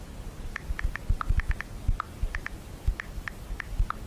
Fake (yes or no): no